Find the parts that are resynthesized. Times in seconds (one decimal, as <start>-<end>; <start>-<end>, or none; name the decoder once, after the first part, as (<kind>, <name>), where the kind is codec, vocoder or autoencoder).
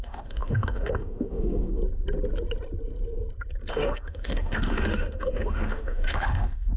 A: 0.0-1.8 (autoencoder, DAC-VAE); 3.7-6.8